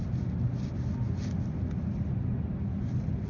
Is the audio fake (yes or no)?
no